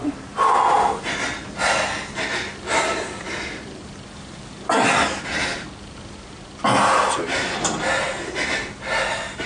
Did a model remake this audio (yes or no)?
no